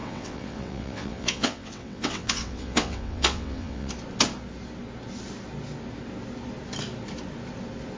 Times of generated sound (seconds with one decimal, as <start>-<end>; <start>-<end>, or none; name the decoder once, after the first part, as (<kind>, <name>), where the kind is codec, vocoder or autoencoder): 0.0-3.9 (vocoder, WaveNeXt)